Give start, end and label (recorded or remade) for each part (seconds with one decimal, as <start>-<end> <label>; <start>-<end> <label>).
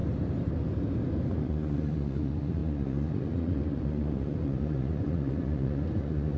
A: 0.0-1.3 recorded; 1.3-6.4 remade